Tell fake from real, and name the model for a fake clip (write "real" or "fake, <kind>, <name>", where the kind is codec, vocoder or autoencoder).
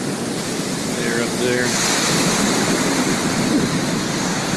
real